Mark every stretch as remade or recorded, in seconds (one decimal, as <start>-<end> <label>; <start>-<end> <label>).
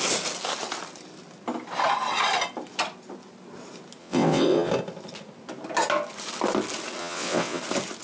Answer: 0.0-4.0 recorded; 4.0-4.7 remade; 4.7-7.0 recorded; 7.0-7.6 remade; 7.6-8.0 recorded